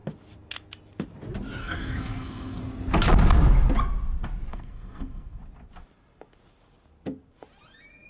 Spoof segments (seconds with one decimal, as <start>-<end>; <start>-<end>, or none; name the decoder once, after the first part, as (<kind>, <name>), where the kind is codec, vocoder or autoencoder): 1.6-2.6 (codec, SNAC); 4.5-5.4